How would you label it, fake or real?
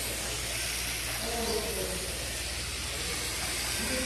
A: real